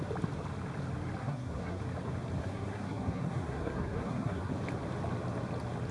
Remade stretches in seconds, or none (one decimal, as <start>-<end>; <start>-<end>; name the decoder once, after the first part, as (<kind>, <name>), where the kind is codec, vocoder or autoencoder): 1.2-1.8 (codec, SNAC); 2.4-4.5